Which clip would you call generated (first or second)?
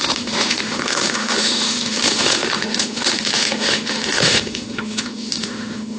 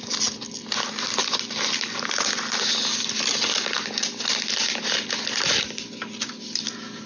first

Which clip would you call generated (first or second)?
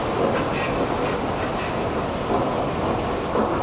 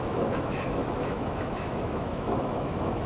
second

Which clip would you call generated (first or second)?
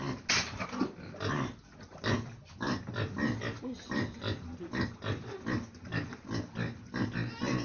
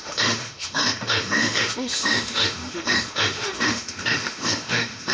second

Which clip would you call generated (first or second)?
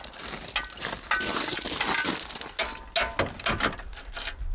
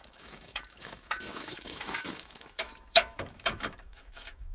second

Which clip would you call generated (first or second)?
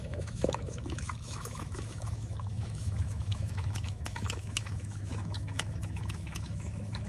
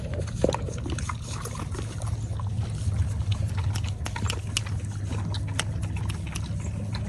first